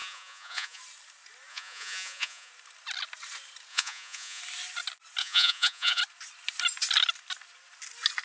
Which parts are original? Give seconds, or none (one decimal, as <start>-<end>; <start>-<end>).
0.8-1.5; 2.5-3.7; 4.4-5.2; 6.0-8.2